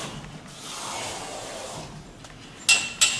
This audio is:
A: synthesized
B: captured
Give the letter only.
B